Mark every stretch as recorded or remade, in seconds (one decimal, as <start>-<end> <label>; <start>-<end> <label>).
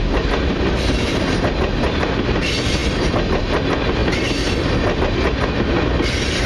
0.0-6.5 recorded